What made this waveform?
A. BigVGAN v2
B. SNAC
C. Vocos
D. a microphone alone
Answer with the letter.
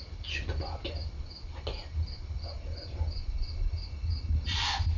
D